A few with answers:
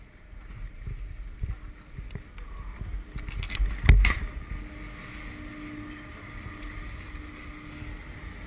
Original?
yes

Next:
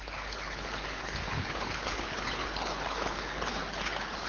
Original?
no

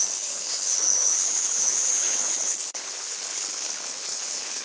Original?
no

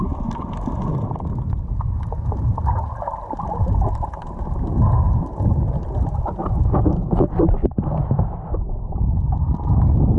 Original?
yes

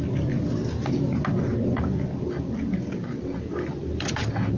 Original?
yes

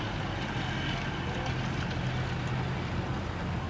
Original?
yes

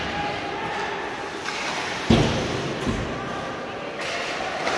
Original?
yes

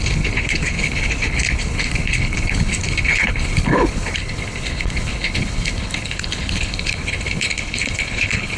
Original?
no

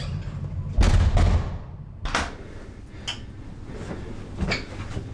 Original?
yes